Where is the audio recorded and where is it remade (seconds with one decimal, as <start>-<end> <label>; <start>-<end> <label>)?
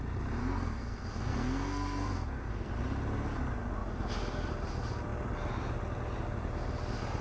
0.0-0.4 recorded; 0.4-2.7 remade; 2.7-7.2 recorded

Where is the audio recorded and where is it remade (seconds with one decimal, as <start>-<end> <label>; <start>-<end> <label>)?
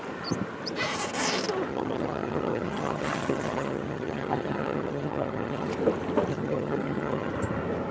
0.0-1.7 recorded; 1.7-5.7 remade; 5.7-6.3 recorded; 6.3-7.3 remade; 7.3-7.9 recorded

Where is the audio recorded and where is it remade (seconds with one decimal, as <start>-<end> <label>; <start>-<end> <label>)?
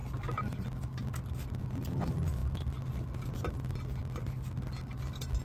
0.0-5.4 recorded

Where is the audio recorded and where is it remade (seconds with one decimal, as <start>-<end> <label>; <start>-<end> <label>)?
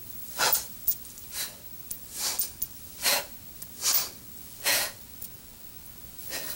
0.0-4.4 recorded; 4.4-6.5 remade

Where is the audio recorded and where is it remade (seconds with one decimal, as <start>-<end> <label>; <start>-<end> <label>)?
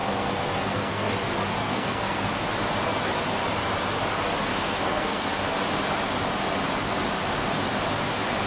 0.0-1.1 remade; 1.1-1.6 recorded; 1.6-2.3 remade; 2.3-4.5 recorded; 4.5-5.3 remade; 5.3-8.5 recorded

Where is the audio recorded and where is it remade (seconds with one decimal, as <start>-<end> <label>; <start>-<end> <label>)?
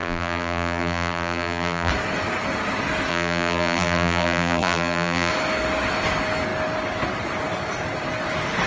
0.0-1.9 remade; 1.9-3.1 recorded; 3.1-5.3 remade; 5.3-8.7 recorded